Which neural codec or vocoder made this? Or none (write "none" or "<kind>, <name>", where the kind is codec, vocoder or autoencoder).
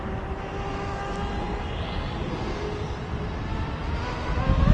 none